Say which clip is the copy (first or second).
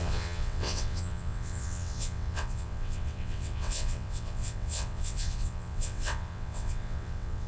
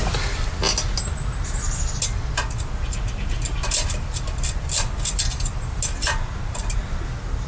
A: first